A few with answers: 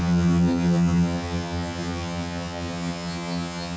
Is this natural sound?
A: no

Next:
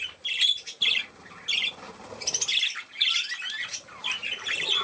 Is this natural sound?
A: yes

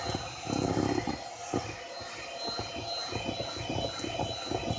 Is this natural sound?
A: yes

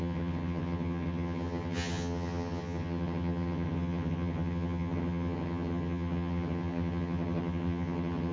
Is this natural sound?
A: no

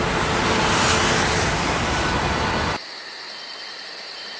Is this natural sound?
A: yes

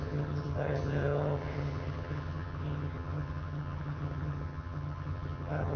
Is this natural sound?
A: no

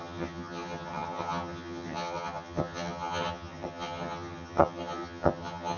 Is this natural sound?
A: no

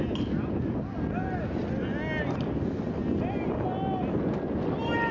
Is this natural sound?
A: yes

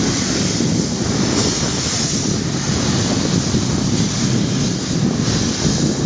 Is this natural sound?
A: yes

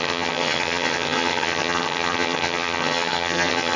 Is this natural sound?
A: no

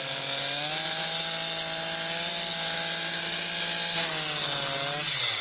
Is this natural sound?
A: yes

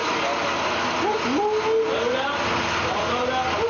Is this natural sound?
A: yes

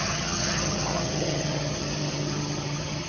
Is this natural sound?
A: no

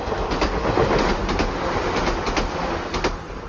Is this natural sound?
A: yes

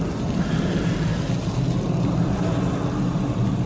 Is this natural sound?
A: yes